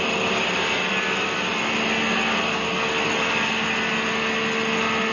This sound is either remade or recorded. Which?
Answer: recorded